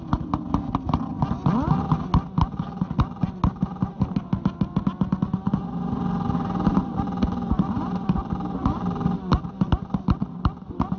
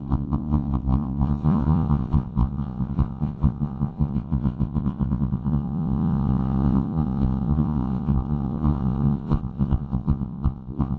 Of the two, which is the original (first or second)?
first